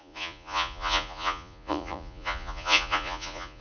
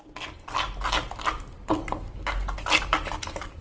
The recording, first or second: second